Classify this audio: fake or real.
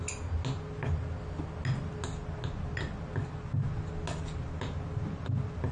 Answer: real